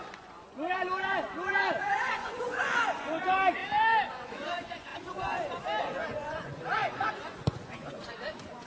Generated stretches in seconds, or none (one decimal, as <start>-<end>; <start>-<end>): 0.0-3.6; 4.1-4.9; 5.8-8.7